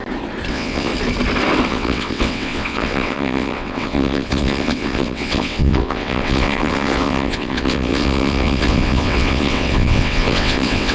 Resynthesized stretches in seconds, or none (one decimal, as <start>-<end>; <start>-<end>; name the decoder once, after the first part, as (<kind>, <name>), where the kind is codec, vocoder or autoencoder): 0.5-0.9 (vocoder, WaveNeXt); 1.7-10.9